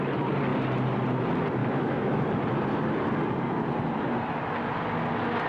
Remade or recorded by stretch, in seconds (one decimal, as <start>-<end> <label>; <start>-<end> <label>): 0.0-1.6 recorded; 1.6-2.2 remade; 2.2-5.5 recorded